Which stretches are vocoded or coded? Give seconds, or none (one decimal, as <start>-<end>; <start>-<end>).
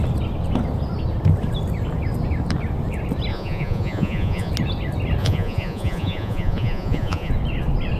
3.3-4.5; 5.2-7.3